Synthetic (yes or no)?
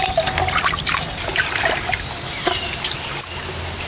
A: no